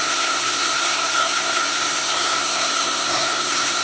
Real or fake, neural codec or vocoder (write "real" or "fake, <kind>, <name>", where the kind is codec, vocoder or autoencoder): fake, codec, SNAC